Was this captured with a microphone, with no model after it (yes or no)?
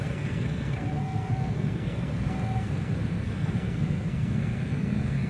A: no